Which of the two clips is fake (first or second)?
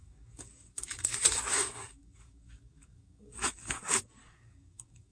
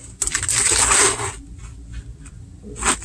first